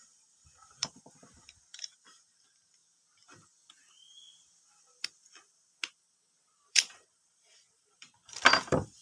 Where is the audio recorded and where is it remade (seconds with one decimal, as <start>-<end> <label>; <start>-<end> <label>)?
0.0-2.8 remade; 2.8-6.7 recorded; 6.7-9.0 remade